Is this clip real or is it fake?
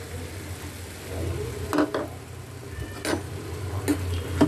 real